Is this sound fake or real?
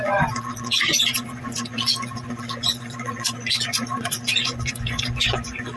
fake